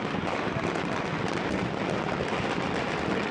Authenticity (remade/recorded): recorded